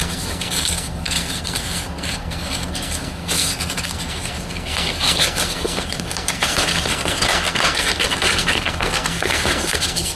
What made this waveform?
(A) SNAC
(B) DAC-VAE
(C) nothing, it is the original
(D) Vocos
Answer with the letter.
A